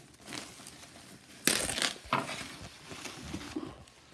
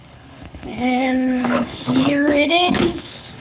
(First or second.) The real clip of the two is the first